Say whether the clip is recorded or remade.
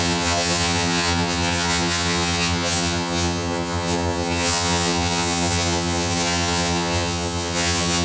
remade